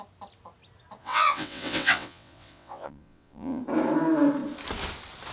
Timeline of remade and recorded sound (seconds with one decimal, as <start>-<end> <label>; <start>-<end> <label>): 0.0-1.0 recorded; 1.0-3.6 remade; 3.6-5.3 recorded